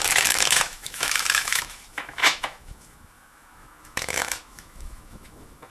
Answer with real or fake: fake